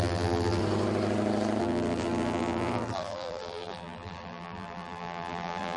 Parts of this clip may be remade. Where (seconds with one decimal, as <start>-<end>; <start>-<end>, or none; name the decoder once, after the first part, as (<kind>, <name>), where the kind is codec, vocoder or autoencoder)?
0.0-0.6 (vocoder, BigVGAN v2); 1.6-5.8